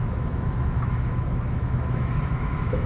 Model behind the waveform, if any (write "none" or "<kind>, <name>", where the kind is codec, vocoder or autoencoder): autoencoder, DAC-VAE